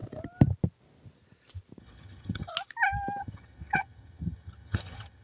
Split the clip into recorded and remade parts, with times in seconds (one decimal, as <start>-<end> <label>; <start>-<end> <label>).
0.0-1.8 recorded; 1.8-2.5 remade; 2.5-3.2 recorded; 3.2-5.2 remade